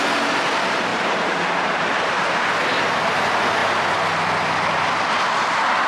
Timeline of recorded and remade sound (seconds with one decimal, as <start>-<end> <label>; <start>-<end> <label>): 0.0-0.9 recorded; 0.9-2.3 remade; 2.3-5.9 recorded